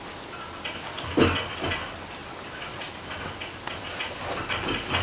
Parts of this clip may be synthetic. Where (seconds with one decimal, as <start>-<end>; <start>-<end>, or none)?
none